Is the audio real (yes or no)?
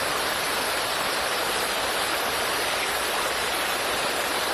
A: yes